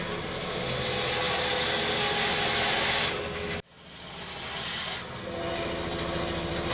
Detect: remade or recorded recorded